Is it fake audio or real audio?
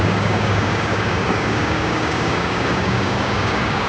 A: fake